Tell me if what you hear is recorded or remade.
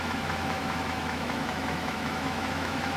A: remade